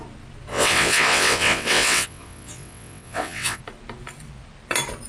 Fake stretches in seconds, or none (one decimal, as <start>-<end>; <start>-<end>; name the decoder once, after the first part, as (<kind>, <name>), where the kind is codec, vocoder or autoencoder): 0.5-3.6 (vocoder, WaveNeXt)